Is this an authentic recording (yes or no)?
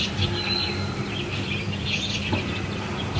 yes